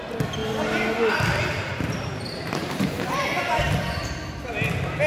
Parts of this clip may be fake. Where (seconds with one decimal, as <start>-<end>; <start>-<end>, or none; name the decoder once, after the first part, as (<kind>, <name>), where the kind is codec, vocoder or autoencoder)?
1.7-3.6 (vocoder, BigVGAN v2)